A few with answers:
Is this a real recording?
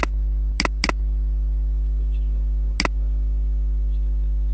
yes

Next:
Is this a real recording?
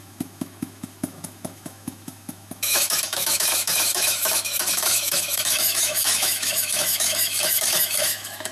no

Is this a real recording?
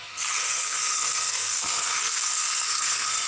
no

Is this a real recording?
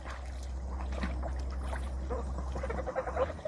yes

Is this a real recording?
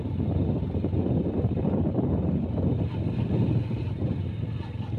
yes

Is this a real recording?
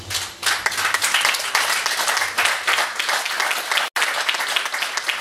yes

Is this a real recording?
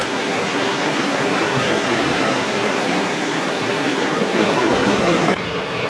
no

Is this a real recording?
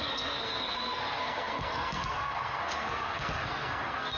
no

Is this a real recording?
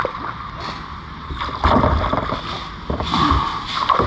yes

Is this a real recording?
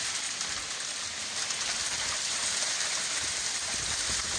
no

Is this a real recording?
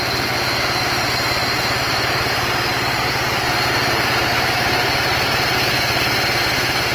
yes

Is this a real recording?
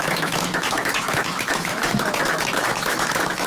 no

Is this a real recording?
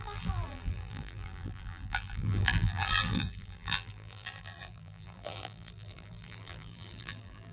no